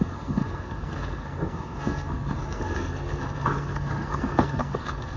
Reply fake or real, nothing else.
fake